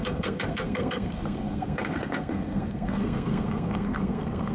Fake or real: fake